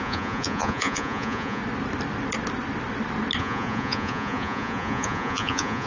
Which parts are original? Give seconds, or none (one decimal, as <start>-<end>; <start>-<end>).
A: 1.6-3.4